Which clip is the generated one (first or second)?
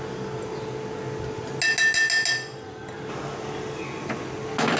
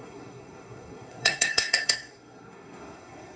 second